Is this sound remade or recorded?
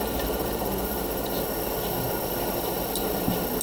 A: recorded